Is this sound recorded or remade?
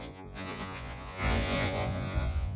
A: remade